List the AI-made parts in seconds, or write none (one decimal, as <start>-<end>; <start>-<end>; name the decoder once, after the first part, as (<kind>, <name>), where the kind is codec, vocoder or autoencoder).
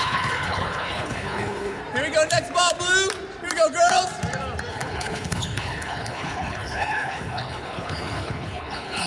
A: 0.0-1.8 (codec, HILCodec); 4.7-9.1